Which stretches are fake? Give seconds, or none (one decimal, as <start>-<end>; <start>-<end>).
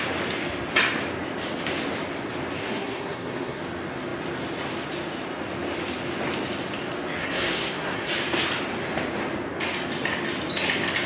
2.6-3.6; 7.2-8.1